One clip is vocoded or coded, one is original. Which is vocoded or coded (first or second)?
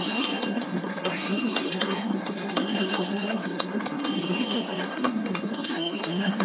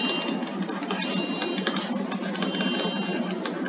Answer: first